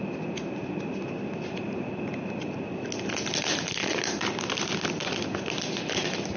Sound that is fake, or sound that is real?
real